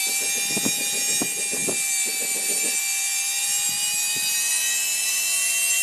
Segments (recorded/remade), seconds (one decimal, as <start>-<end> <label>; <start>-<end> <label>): 0.0-5.8 recorded